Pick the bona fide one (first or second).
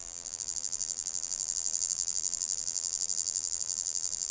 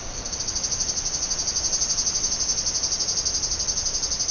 second